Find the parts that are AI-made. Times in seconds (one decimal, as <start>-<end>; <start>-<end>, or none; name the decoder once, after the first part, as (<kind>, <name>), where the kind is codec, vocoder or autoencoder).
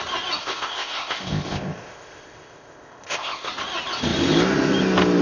0.4-3.5 (codec, ZipCodec)